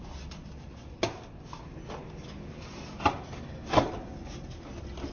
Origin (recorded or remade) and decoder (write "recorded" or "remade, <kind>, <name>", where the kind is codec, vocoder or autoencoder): recorded